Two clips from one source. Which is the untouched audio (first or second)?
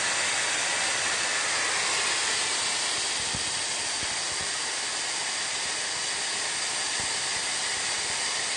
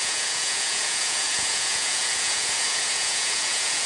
first